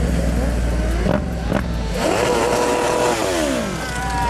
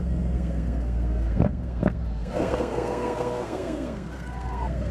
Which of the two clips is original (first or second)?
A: first